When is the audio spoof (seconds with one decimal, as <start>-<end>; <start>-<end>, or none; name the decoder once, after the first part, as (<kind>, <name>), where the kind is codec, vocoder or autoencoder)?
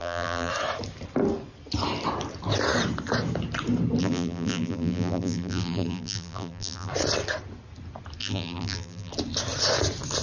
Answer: 0.0-0.5 (vocoder, BigVGAN v2); 4.0-6.9; 8.2-9.1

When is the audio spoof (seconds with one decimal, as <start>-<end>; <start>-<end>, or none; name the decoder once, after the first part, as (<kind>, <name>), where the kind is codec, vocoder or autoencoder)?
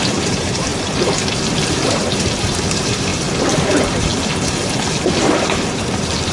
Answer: 0.0-0.7 (vocoder, BigVGAN v2); 1.7-3.1; 3.6-4.1; 5.2-6.3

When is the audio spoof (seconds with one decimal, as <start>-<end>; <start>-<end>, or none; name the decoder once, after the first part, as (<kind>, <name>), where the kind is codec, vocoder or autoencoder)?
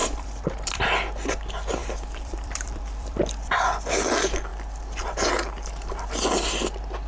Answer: 0.0-0.8 (vocoder, BigVGAN v2); 1.8-3.6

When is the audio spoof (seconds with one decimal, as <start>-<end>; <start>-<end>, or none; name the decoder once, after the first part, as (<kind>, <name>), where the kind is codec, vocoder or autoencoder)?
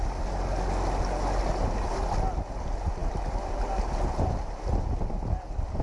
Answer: none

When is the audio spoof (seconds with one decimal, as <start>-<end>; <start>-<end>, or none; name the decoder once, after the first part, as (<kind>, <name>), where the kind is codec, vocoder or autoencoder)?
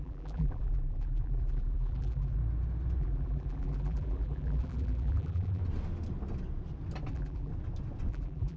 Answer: 0.0-2.4 (vocoder, BigVGAN v2); 3.0-5.6; 7.1-7.5; 8.1-8.6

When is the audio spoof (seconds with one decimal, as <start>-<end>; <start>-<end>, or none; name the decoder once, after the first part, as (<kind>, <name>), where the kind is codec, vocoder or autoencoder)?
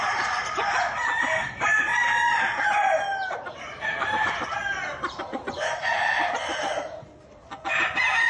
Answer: 3.1-4.1 (vocoder, BigVGAN v2)